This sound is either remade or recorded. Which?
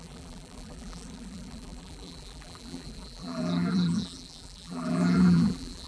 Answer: remade